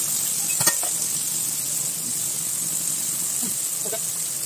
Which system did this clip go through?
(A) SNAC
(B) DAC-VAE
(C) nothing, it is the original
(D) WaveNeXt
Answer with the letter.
C